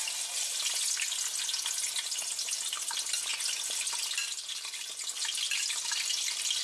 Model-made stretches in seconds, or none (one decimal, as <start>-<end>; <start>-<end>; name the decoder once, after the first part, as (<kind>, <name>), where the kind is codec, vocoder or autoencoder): none